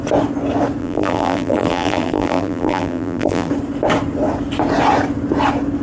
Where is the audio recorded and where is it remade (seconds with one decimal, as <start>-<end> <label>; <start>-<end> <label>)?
0.0-0.8 recorded; 0.8-3.5 remade; 3.5-5.8 recorded